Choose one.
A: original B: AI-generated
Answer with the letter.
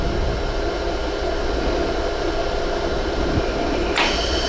A